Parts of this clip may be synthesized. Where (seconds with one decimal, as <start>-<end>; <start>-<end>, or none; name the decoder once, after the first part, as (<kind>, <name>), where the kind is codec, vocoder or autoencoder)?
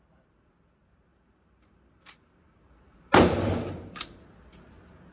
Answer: 1.1-4.2 (vocoder, BigVGAN v2)